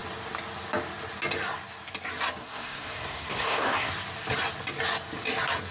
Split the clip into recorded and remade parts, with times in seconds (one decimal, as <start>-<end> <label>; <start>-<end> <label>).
0.0-2.4 recorded; 2.4-3.9 remade; 3.9-5.7 recorded